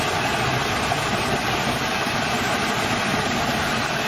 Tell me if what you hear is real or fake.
real